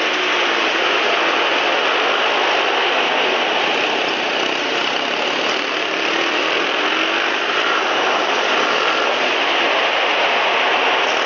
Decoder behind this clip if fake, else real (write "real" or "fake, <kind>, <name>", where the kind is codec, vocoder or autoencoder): real